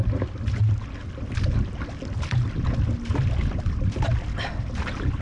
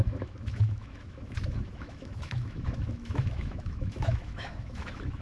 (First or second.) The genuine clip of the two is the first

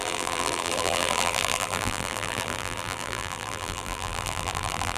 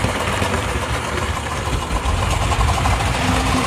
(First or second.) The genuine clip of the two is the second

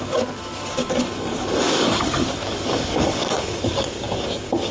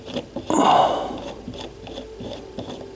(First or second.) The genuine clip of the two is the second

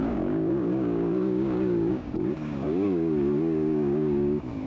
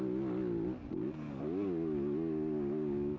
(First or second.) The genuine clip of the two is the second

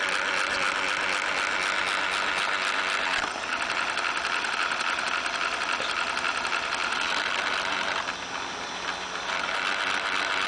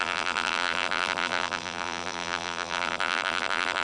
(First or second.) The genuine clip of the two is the first